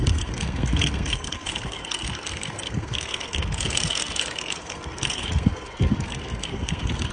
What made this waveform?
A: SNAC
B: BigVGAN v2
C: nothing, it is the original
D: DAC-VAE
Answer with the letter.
A